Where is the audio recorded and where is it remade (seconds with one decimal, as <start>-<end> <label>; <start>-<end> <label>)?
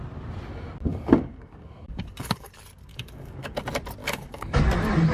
0.0-0.9 recorded; 0.9-2.5 remade; 2.5-2.9 recorded; 2.9-3.5 remade; 3.5-4.0 recorded; 4.0-4.6 remade; 4.6-5.1 recorded